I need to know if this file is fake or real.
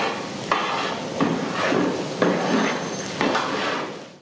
real